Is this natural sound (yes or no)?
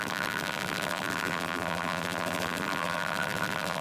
no